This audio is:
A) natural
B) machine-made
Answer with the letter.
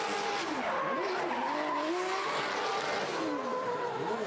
A